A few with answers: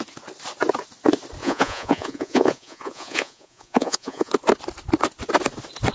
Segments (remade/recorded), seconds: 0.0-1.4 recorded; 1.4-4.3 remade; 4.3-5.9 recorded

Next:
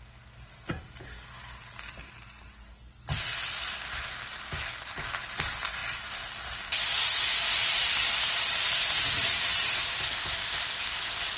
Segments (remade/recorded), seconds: 0.0-5.8 recorded; 5.8-6.3 remade; 6.3-11.4 recorded

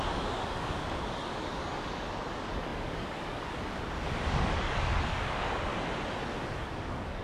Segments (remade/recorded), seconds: 0.0-5.7 remade; 5.7-6.6 recorded; 6.6-7.2 remade

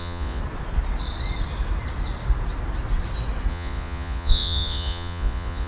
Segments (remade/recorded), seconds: 0.0-0.4 remade; 0.4-3.5 recorded; 3.5-5.7 remade

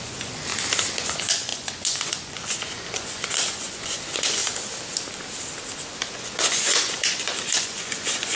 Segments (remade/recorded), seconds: 0.0-0.5 remade; 0.5-1.0 recorded; 1.0-4.4 remade; 4.4-6.1 recorded; 6.1-8.4 remade

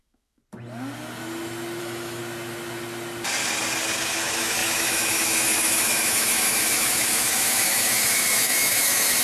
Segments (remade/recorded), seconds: 0.0-0.4 remade; 0.4-1.8 recorded; 1.8-2.2 remade; 2.2-4.0 recorded; 4.0-9.2 remade

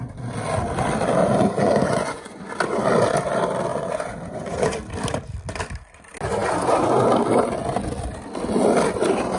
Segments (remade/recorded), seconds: 0.0-1.2 recorded; 1.2-2.4 remade; 2.4-3.7 recorded; 3.7-4.8 remade; 4.8-9.4 recorded